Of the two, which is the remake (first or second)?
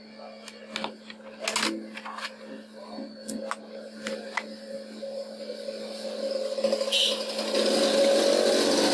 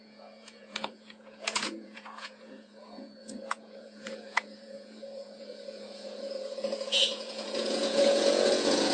second